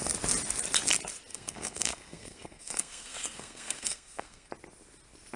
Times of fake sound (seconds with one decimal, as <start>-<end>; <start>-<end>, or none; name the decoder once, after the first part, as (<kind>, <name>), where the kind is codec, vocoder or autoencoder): 1.3-4.5 (codec, SNAC)